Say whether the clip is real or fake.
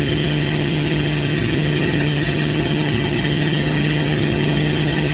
fake